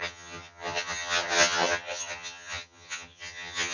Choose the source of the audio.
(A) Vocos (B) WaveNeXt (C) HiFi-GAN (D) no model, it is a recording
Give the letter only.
C